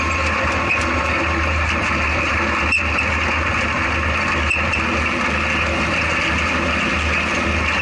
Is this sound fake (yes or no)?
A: no